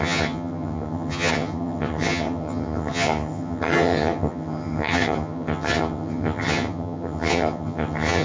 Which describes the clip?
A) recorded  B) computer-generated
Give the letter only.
B